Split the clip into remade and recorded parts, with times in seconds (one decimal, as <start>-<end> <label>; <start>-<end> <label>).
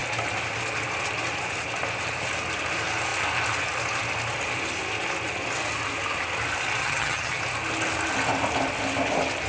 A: 0.0-6.8 recorded; 6.8-7.4 remade; 7.4-9.5 recorded